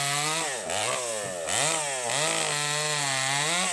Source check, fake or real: real